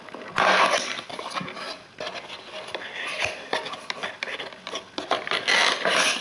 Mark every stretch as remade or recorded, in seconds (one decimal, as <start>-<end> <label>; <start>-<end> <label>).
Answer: 0.0-6.2 recorded